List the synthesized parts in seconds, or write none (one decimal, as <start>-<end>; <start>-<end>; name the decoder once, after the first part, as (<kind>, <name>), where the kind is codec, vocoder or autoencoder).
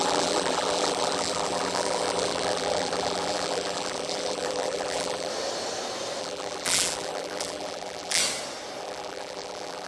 0.0-5.3 (vocoder, BigVGAN v2); 6.2-8.2; 8.8-9.9